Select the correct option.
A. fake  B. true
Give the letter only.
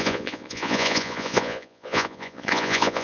A